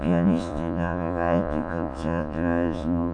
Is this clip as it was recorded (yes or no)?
no